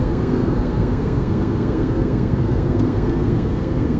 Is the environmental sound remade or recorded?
remade